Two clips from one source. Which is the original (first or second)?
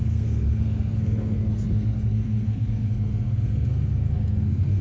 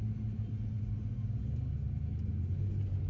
second